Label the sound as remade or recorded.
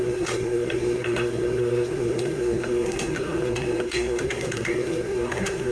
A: remade